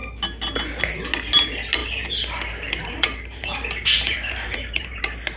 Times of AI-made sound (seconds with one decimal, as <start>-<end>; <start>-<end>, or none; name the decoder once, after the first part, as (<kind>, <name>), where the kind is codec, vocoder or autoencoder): 1.8-5.0 (vocoder, BigVGAN v2)